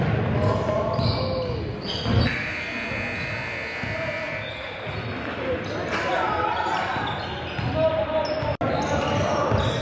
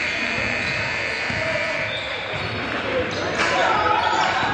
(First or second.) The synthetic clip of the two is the second